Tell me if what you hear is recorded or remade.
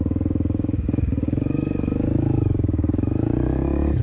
remade